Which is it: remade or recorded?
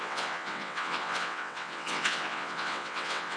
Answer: remade